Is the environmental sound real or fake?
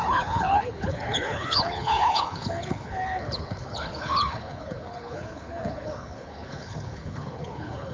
fake